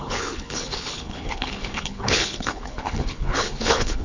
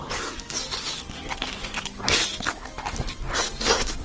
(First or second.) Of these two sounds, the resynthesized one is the first